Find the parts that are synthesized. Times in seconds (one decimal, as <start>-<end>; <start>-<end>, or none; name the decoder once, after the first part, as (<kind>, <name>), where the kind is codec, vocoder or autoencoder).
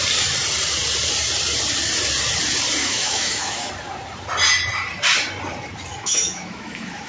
2.8-3.7 (autoencoder, DAC-VAE); 5.9-7.1